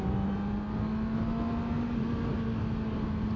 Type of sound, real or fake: real